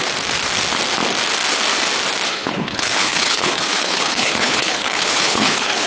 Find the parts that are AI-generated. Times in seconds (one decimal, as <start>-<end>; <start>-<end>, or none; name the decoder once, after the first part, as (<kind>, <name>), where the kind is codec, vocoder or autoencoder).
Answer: 2.3-5.9 (codec, HILCodec)